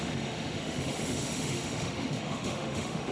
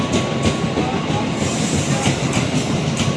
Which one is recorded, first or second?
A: second